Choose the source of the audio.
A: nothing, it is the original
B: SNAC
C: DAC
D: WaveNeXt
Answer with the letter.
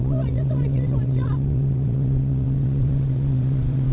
D